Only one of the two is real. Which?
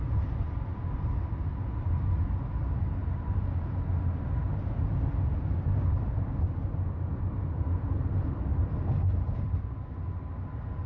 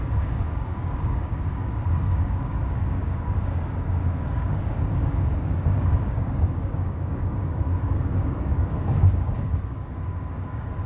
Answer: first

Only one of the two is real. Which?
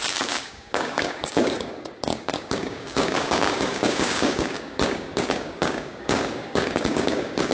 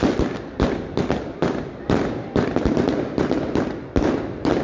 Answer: second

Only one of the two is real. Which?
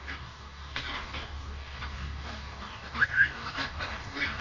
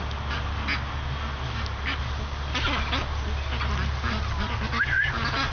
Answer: second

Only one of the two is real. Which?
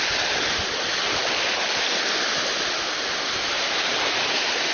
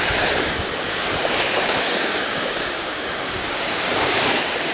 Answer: first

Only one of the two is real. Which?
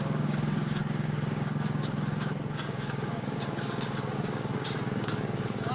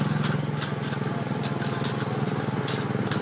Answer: second